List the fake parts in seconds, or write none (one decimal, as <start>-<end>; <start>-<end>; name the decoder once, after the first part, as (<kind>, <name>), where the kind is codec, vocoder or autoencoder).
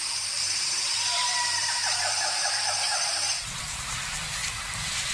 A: 0.0-5.1 (vocoder, BigVGAN v2)